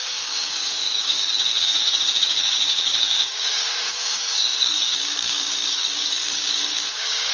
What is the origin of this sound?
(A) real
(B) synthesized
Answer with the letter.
B